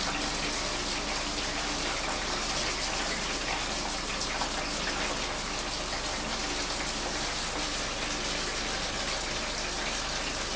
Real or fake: real